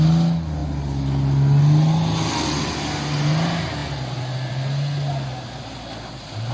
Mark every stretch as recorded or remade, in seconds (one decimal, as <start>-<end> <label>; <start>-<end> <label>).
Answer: 0.0-6.5 recorded